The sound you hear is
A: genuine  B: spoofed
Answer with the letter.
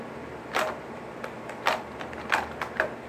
A